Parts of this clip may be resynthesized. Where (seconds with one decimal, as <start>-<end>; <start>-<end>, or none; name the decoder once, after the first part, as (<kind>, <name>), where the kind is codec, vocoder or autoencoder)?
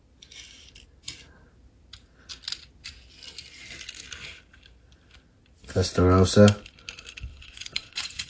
7.3-8.3 (vocoder, WaveNeXt)